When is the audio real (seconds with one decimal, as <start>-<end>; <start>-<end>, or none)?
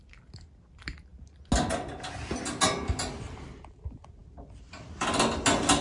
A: 0.0-5.8